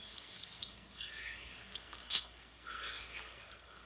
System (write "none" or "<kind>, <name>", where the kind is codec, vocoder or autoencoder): codec, SNAC